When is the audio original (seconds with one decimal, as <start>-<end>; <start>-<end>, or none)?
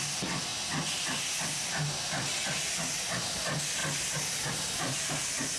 0.0-5.6